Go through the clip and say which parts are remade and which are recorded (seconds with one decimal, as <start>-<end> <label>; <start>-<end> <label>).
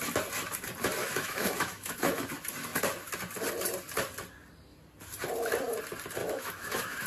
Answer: 0.0-1.0 recorded; 1.0-2.3 remade; 2.3-6.2 recorded; 6.2-7.1 remade